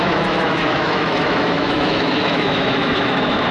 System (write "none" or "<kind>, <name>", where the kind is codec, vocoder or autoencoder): autoencoder, DAC-VAE